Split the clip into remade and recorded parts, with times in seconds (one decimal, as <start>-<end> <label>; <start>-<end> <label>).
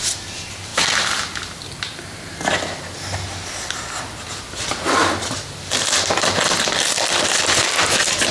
0.0-8.3 recorded